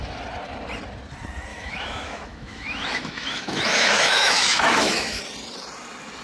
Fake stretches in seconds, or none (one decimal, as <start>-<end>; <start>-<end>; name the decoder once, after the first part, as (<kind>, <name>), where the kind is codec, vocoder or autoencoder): 1.5-5.2 (autoencoder, DAC-VAE)